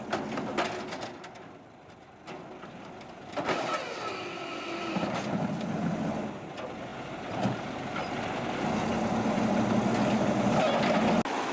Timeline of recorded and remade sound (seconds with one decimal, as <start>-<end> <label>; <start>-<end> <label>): 0.0-11.5 recorded